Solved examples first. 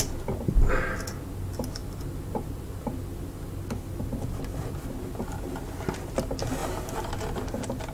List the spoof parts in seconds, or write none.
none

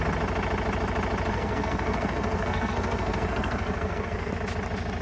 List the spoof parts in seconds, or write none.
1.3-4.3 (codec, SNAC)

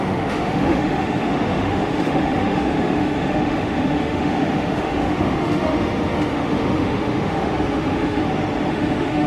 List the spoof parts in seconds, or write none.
0.0-8.2 (autoencoder, DAC-VAE); 8.7-9.3

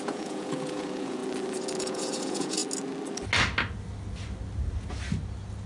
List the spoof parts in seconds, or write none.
0.0-1.2 (vocoder, Vocos); 1.8-2.6